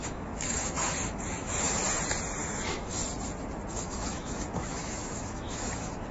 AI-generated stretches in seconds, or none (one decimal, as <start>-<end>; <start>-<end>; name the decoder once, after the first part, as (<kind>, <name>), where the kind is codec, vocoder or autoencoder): 0.0-1.8 (autoencoder, DAC-VAE); 2.4-3.0; 3.7-6.1